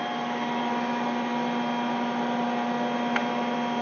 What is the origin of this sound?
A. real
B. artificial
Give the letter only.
A